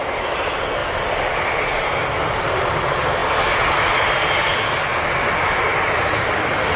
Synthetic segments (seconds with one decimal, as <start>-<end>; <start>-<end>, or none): none